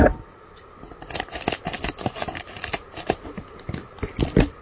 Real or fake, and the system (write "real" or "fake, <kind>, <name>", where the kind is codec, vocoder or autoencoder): real